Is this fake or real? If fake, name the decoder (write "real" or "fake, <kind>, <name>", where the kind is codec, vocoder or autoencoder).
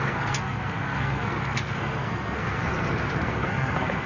fake, codec, SNAC